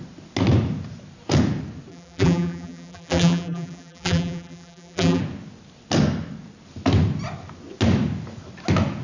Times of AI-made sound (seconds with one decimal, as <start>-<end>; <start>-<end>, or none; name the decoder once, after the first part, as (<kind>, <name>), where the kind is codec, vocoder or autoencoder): 1.9-5.2 (vocoder, BigVGAN v2)